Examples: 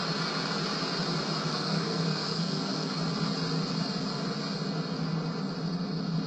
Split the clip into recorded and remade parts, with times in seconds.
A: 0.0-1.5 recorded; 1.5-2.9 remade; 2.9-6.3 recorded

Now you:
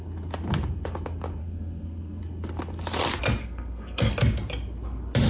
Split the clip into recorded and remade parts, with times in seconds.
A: 0.0-1.4 recorded; 1.4-2.2 remade; 2.2-3.4 recorded; 3.4-4.1 remade; 4.1-5.3 recorded

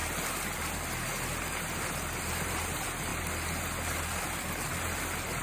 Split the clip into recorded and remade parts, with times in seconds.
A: 0.0-5.4 recorded

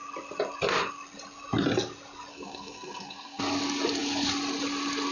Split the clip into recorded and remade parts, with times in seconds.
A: 0.0-2.3 recorded; 2.3-3.4 remade; 3.4-5.1 recorded

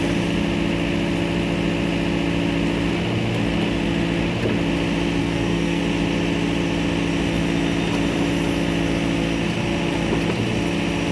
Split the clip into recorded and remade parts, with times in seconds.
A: 0.0-5.2 recorded; 5.2-5.8 remade; 5.8-11.1 recorded

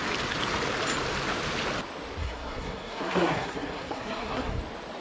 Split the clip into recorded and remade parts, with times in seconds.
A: 0.0-2.2 recorded; 2.2-4.6 remade; 4.6-5.0 recorded

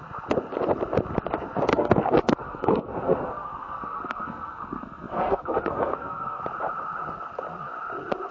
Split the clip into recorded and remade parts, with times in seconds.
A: 0.0-1.7 recorded; 1.7-6.4 remade; 6.4-8.3 recorded